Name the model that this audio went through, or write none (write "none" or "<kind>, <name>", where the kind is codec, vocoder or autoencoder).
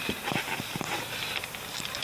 vocoder, BigVGAN v2